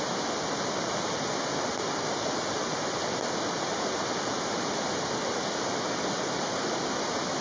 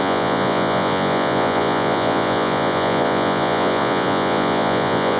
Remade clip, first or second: second